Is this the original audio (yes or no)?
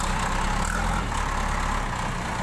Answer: yes